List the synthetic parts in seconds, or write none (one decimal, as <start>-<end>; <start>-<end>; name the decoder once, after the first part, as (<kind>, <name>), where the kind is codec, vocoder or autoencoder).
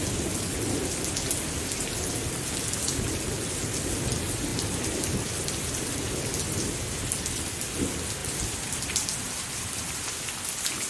4.5-6.4 (vocoder, BigVGAN v2); 8.2-9.9